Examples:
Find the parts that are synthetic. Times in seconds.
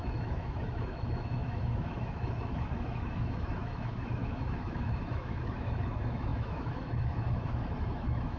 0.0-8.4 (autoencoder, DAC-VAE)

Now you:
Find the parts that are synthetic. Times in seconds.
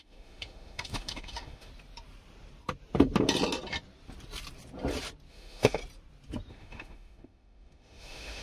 0.0-1.7 (autoencoder, DAC-VAE); 5.3-5.8; 6.5-8.4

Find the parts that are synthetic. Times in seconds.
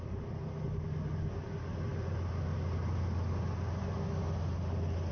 none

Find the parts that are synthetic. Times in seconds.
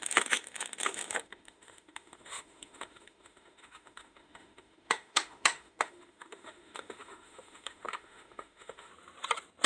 0.0-8.9 (autoencoder, DAC-VAE)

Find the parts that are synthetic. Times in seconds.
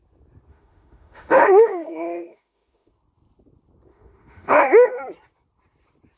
0.5-2.9 (autoencoder, DAC-VAE); 3.9-5.0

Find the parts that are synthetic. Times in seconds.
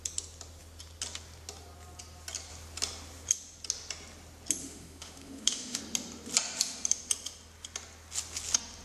4.6-5.8 (autoencoder, DAC-VAE)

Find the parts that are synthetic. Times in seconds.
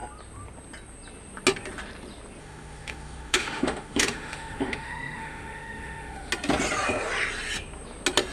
2.4-6.3 (autoencoder, DAC-VAE)